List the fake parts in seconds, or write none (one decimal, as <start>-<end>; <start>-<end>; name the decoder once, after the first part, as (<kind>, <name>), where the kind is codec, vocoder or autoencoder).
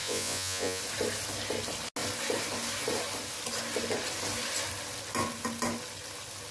0.0-0.8 (vocoder, Vocos)